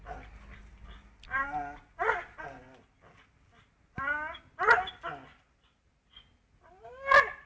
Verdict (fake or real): real